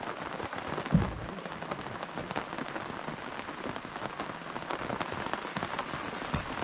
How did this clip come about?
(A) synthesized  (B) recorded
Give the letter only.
B